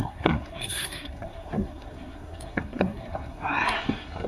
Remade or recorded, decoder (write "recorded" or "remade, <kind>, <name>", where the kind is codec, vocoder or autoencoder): remade, codec, SNAC